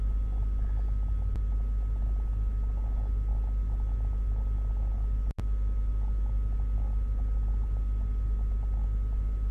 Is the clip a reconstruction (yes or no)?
no